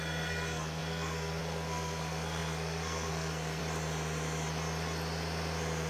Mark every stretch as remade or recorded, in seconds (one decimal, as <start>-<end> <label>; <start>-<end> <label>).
0.0-3.6 remade; 3.6-5.9 recorded